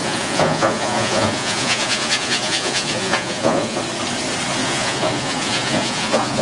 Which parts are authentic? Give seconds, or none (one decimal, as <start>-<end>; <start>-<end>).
3.8-4.6

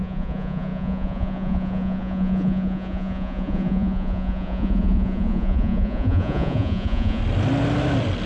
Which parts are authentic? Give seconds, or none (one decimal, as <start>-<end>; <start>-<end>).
7.2-8.3

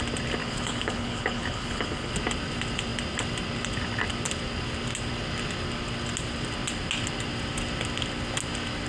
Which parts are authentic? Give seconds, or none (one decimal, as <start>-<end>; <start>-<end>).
0.0-0.4; 2.1-8.9

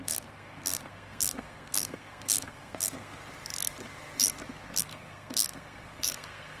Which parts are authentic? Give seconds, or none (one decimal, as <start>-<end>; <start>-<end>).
3.2-4.8

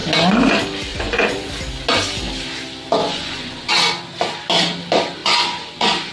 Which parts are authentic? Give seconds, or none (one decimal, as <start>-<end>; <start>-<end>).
0.0-0.9; 1.5-3.0; 3.7-5.2

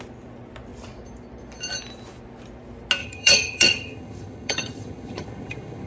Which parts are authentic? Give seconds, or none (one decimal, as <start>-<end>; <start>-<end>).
0.0-3.0